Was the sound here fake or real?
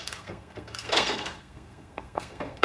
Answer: fake